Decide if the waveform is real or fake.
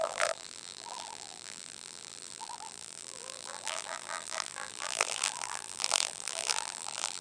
fake